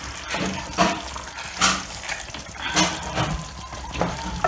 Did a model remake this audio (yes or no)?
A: no